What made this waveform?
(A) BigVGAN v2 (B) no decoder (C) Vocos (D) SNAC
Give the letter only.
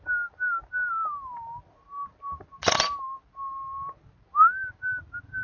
B